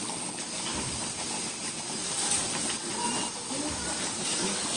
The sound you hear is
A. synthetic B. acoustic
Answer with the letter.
B